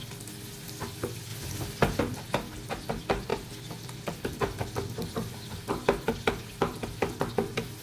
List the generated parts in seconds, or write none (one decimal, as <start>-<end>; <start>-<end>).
none